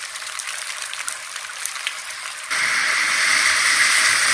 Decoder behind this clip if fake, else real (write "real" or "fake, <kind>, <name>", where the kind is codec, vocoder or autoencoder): real